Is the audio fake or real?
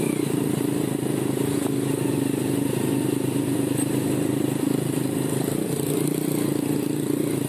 real